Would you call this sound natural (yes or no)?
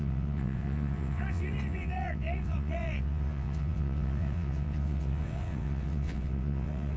no